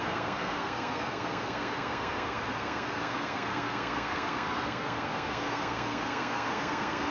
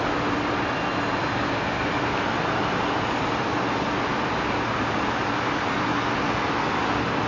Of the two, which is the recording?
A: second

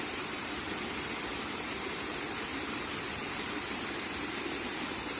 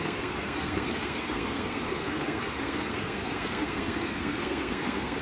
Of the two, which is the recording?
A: first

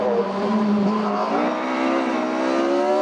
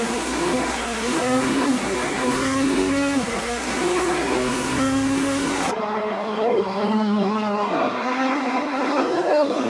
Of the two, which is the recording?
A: first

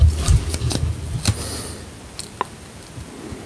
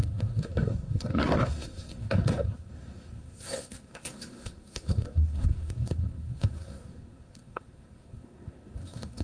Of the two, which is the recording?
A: first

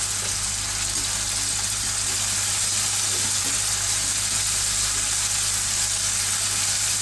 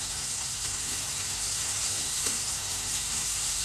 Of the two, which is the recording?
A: first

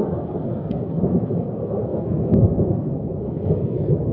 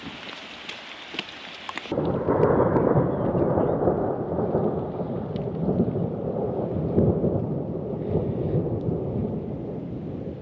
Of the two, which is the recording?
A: second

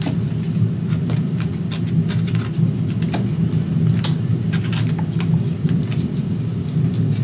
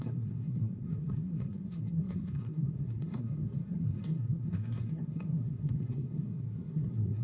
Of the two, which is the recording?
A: first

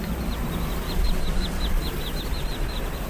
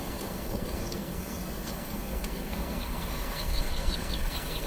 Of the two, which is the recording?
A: first